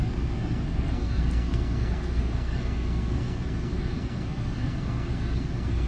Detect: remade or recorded remade